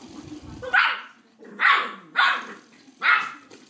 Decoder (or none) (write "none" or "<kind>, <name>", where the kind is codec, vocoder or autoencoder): none